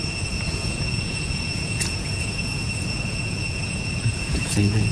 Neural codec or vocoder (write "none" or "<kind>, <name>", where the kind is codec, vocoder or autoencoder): vocoder, Vocos